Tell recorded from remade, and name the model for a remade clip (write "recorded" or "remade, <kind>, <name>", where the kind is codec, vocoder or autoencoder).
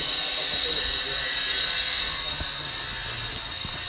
recorded